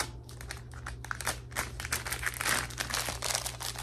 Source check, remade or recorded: recorded